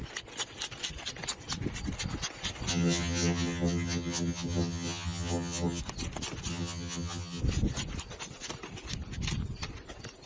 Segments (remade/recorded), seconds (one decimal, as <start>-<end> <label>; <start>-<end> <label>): 0.0-2.7 recorded; 2.7-5.8 remade; 5.8-6.5 recorded; 6.5-7.4 remade; 7.4-10.3 recorded